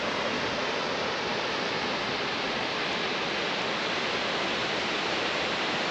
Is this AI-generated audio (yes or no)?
no